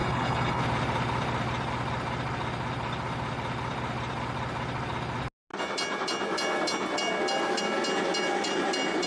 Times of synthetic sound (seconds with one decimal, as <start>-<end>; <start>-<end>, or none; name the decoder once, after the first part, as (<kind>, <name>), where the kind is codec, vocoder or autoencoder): 0.0-0.6 (codec, HILCodec)